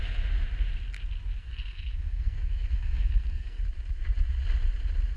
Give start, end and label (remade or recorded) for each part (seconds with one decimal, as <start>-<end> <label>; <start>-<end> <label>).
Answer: 0.0-1.4 recorded; 1.4-3.6 remade; 3.6-5.2 recorded